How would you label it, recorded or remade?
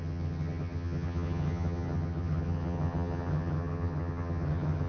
remade